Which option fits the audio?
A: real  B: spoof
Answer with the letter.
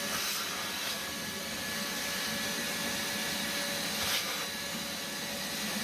A